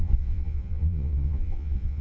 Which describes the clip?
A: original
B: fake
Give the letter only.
B